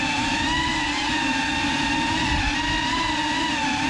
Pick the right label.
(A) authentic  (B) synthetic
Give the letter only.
B